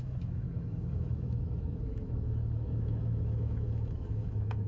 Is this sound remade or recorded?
remade